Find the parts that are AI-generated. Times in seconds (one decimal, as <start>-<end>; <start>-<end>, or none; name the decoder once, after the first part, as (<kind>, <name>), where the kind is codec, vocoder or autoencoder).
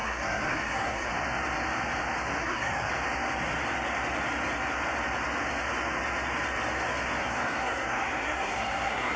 0.0-1.1 (codec, SNAC); 2.4-2.9; 7.2-9.2